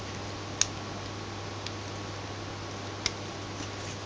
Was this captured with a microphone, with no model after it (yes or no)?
yes